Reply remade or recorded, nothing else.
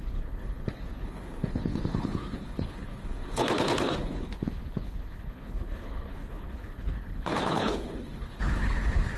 remade